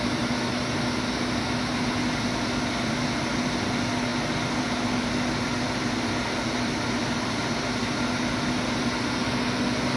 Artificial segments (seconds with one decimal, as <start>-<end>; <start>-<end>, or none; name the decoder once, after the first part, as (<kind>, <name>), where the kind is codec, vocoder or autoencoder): none